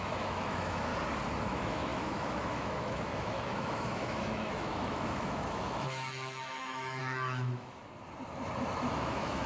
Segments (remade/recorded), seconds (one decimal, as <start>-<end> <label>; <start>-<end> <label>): 0.0-0.9 remade; 0.9-1.4 recorded; 1.4-7.8 remade; 7.8-8.9 recorded; 8.9-9.5 remade